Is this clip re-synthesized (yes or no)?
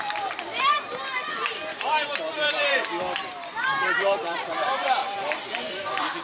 yes